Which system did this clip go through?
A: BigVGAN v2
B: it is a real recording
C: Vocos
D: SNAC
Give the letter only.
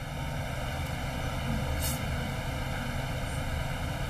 B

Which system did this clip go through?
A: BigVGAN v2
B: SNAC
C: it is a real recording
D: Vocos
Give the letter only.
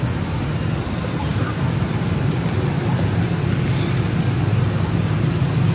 C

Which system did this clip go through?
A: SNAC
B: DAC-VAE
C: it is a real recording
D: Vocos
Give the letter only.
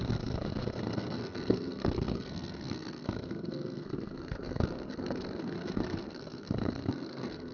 A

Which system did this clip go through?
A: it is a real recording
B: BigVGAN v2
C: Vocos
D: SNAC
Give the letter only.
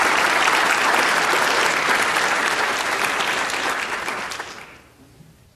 A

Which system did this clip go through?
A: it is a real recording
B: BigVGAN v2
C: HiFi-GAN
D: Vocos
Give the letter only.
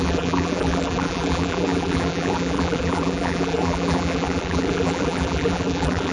B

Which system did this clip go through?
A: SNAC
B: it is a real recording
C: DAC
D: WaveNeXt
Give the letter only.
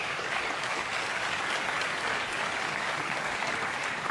C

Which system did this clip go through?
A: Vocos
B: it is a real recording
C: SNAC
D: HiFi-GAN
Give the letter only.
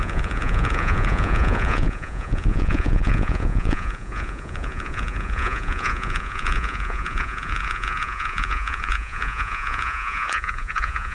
A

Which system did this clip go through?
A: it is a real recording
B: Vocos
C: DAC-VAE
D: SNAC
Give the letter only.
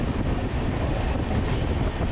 A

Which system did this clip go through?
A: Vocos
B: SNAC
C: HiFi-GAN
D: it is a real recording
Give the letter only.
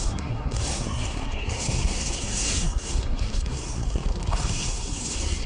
B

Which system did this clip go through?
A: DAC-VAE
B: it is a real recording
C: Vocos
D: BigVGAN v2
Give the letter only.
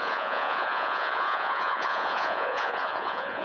C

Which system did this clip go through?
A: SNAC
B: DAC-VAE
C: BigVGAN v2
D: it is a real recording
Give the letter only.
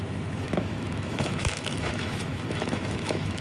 B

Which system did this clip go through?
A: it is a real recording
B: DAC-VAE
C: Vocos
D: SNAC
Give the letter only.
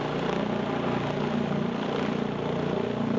A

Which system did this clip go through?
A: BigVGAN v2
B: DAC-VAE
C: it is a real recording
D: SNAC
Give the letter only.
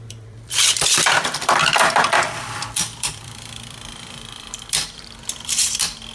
A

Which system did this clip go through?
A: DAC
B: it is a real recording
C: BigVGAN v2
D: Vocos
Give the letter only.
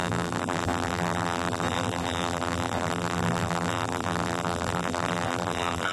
C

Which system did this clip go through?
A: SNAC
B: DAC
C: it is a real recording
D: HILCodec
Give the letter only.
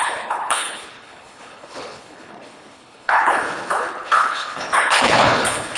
D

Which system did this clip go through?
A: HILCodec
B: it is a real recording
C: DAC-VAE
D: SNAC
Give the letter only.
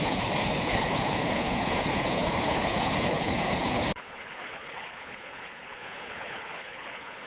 A